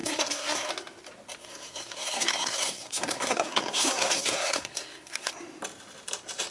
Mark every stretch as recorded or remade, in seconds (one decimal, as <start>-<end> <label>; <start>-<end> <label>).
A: 0.0-0.7 remade; 0.7-1.4 recorded; 1.4-5.3 remade; 5.3-6.5 recorded